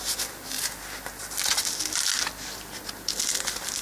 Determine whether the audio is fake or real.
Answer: real